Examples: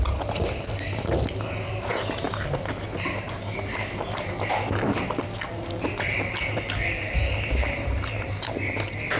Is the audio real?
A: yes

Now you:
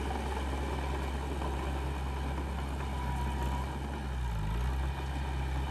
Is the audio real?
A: yes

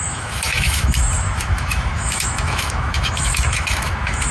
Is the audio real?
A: no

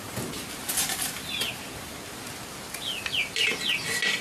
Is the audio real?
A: yes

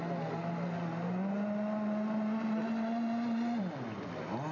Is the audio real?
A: yes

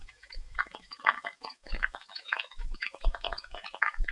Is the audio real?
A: no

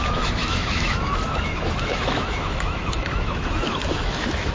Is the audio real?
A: no